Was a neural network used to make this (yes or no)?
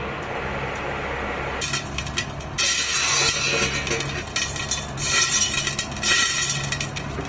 no